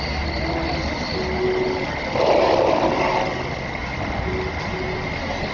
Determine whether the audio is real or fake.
real